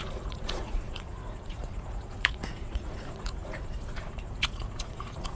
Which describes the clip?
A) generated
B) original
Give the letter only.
A